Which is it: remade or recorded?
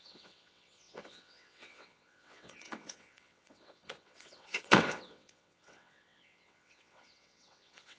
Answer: remade